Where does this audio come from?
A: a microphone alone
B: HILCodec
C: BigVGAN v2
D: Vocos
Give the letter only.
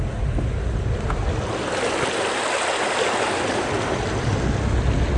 A